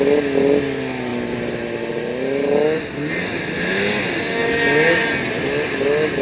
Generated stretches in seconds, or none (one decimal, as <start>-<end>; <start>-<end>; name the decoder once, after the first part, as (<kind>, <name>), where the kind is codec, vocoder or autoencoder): none